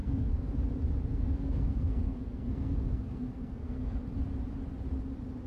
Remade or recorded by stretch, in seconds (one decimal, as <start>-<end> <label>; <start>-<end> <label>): 0.0-0.5 remade; 0.5-1.1 recorded; 1.1-4.0 remade; 4.0-5.5 recorded